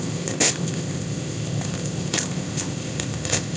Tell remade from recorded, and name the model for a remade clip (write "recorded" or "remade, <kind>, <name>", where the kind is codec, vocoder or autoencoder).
remade, codec, ZipCodec